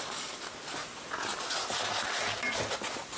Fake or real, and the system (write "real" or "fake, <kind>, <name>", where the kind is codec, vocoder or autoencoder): real